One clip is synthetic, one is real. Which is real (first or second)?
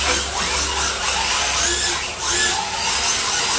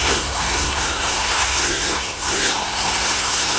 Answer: first